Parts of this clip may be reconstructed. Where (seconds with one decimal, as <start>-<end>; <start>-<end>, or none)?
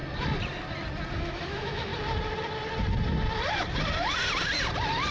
1.1-1.9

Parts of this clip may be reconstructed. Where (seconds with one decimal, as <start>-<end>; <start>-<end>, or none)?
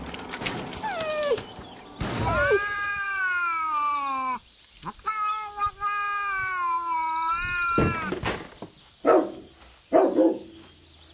1.5-3.2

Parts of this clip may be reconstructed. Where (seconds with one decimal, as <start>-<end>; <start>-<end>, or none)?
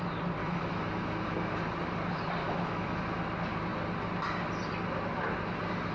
0.4-1.5; 2.4-3.0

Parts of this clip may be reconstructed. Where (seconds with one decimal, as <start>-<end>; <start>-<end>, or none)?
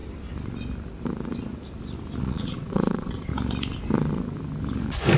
2.2-3.3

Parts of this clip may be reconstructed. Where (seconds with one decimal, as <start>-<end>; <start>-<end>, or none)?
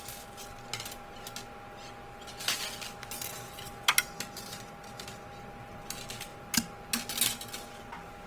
none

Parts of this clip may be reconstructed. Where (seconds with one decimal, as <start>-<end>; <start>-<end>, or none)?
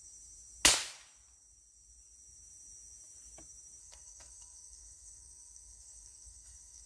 3.8-6.9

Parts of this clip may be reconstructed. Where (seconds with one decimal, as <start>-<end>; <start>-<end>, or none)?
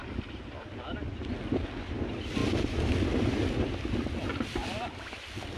1.6-5.6